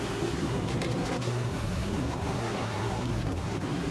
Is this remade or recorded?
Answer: remade